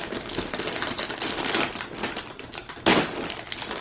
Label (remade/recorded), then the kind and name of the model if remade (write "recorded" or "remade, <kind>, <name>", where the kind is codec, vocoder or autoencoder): recorded